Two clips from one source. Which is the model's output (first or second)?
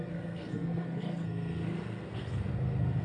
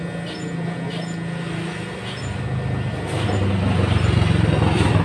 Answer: first